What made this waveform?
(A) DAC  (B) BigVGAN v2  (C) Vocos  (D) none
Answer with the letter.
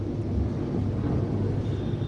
D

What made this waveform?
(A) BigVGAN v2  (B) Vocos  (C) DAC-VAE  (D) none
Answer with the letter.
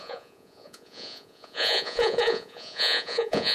B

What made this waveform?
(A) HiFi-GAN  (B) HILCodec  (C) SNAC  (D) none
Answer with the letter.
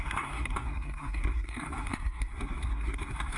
C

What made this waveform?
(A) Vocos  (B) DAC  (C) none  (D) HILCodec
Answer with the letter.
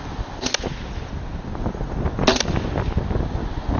C